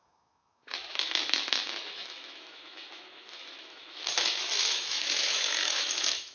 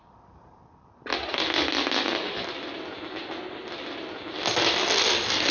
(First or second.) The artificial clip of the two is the first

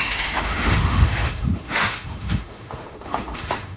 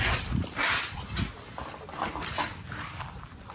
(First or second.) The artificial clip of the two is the first